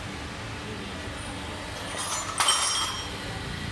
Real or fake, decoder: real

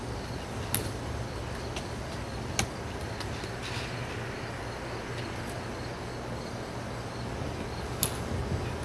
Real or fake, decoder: real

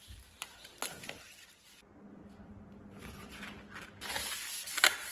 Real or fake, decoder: real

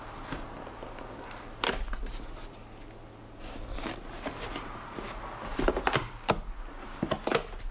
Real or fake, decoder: real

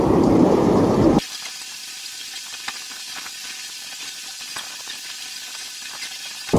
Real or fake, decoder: fake, vocoder, BigVGAN v2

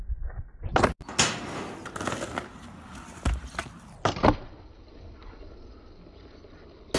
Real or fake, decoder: real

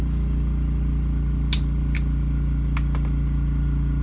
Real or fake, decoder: real